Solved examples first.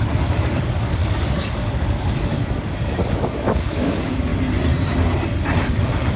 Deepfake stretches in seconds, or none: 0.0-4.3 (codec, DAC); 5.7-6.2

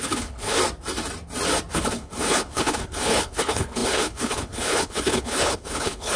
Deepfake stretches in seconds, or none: 0.0-0.6 (codec, HILCodec); 1.7-6.2

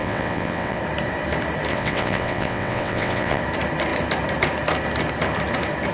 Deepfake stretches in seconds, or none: 0.0-0.8 (vocoder, WaveNeXt); 1.7-3.4

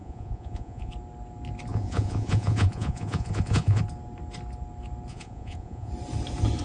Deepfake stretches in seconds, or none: 0.0-0.9 (vocoder, Vocos); 1.7-3.8; 5.1-5.9